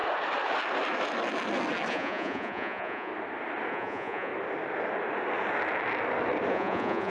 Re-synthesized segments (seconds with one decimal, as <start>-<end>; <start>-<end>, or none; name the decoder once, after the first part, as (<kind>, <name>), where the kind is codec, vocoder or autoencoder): 1.9-3.1 (vocoder, Vocos); 3.7-4.3; 6.5-7.1